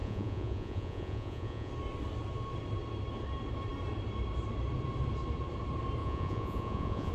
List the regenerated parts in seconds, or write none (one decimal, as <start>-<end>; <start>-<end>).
0.0-1.7; 6.0-7.1